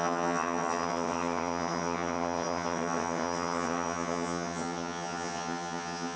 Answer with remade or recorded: remade